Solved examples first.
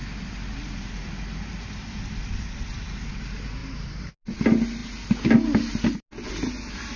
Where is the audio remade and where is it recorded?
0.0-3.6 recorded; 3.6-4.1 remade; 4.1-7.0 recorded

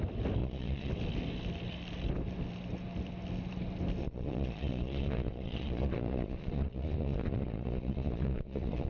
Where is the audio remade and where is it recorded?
0.0-0.4 recorded; 0.4-0.9 remade; 0.9-4.0 recorded; 4.0-8.9 remade

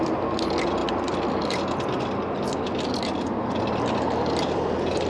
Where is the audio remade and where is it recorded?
0.0-5.1 recorded

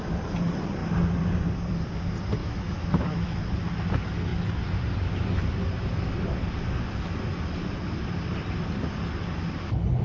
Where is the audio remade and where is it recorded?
0.0-2.4 recorded; 2.4-3.4 remade; 3.4-10.0 recorded

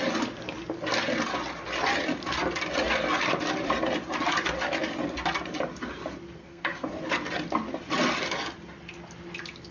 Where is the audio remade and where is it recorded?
0.0-6.4 recorded; 6.4-6.9 remade; 6.9-9.7 recorded

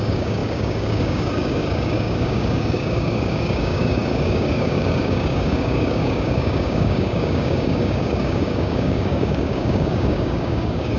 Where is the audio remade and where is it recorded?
0.0-11.0 remade

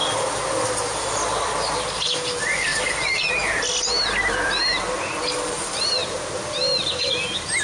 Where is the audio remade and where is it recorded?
0.0-7.6 recorded

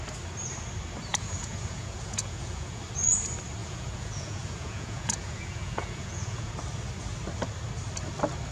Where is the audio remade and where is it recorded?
0.0-1.1 recorded; 1.1-2.8 remade; 2.8-3.6 recorded; 3.6-6.5 remade; 6.5-8.5 recorded